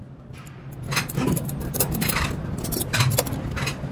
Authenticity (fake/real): real